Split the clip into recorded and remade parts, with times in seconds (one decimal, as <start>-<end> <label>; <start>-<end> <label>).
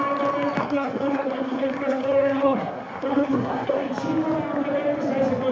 0.0-0.6 recorded; 0.6-3.9 remade; 3.9-5.5 recorded